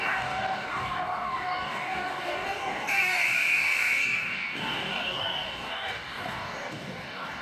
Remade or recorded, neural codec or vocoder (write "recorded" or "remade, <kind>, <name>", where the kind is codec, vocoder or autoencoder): remade, codec, DAC